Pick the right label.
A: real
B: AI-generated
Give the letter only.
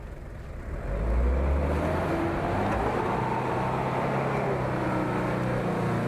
A